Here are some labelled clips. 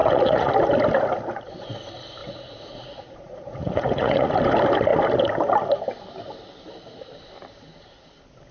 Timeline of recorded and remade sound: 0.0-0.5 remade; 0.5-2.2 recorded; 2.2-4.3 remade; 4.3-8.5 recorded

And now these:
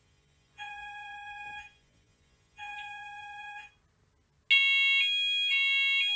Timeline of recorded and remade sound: 0.0-3.7 remade; 3.7-6.2 recorded

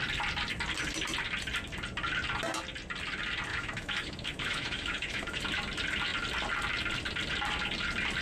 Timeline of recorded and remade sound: 0.0-3.5 recorded; 3.5-5.4 remade; 5.4-8.2 recorded

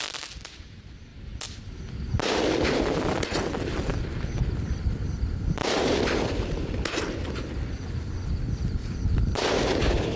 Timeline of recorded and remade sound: 0.0-1.1 remade; 1.1-4.0 recorded; 4.0-5.6 remade; 5.6-9.2 recorded; 9.2-10.2 remade

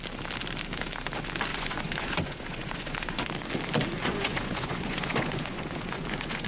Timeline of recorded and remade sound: 0.0-1.5 recorded; 1.5-3.2 remade; 3.2-4.0 recorded; 4.0-6.5 remade

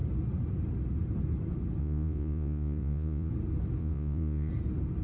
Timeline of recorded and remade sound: 0.0-1.8 recorded; 1.8-3.3 remade; 3.3-3.8 recorded; 3.8-4.5 remade; 4.5-5.0 recorded